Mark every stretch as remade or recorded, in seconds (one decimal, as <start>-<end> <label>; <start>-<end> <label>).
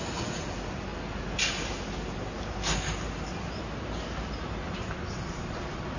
0.0-6.0 recorded